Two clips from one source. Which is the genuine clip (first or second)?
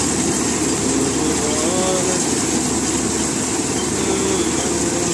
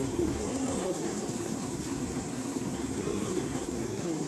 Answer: first